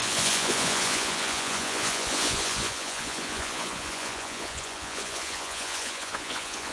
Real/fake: fake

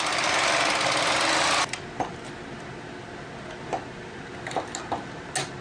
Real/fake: real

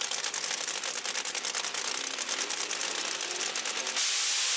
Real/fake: real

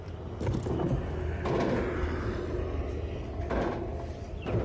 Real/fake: real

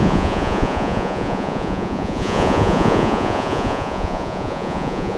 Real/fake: fake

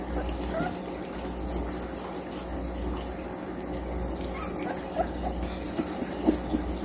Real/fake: real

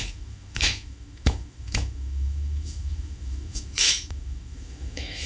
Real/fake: fake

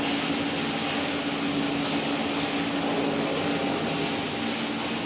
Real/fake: real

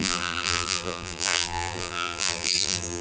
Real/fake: fake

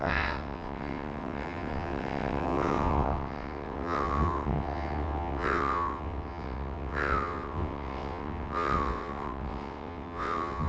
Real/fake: fake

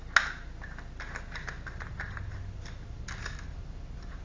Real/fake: real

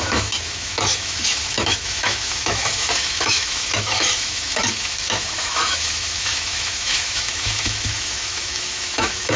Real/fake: fake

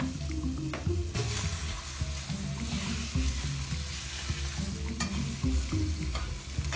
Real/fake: real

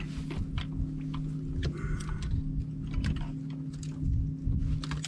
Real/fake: real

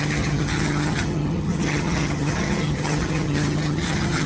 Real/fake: fake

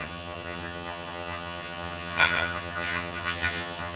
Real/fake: fake